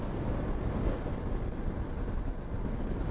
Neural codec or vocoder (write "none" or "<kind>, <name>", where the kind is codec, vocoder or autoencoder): none